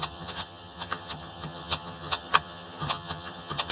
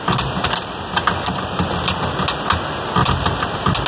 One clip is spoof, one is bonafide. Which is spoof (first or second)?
first